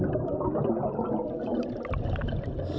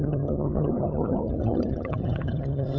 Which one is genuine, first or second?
first